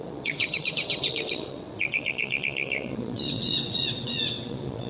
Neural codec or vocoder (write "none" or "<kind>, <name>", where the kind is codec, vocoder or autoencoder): vocoder, WaveNeXt